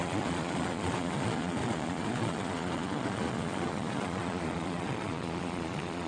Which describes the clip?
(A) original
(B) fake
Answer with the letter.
B